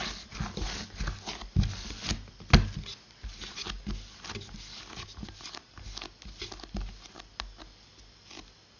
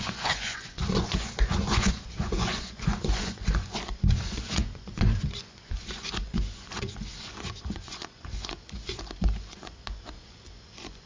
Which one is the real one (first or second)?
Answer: first